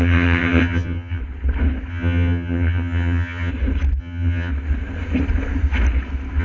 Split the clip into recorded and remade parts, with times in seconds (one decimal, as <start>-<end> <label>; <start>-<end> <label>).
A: 0.0-1.2 remade; 1.2-1.9 recorded; 1.9-3.5 remade; 3.5-4.0 recorded; 4.0-4.5 remade; 4.5-6.4 recorded